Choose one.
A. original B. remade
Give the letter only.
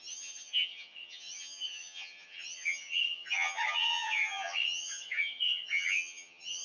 B